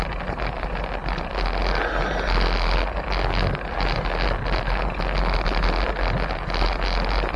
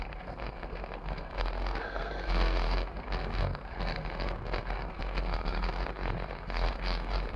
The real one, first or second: first